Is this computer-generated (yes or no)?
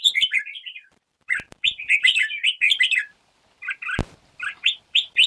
yes